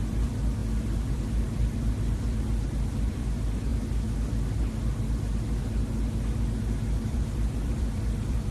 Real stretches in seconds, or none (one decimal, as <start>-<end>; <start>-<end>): 0.6-1.1; 3.7-6.8